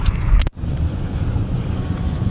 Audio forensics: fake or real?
fake